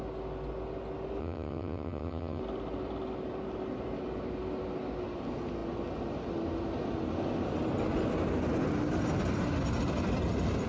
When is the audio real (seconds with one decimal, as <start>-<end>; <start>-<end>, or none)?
0.0-1.2; 2.4-10.7